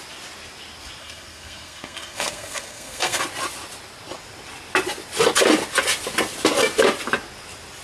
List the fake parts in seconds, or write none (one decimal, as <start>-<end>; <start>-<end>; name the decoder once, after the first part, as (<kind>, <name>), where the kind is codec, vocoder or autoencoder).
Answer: 1.0-3.2 (codec, SNAC)